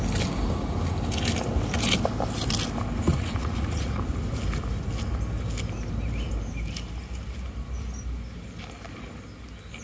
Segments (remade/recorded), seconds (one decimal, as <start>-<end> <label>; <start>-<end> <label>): 0.0-3.1 recorded; 3.1-4.0 remade; 4.0-9.8 recorded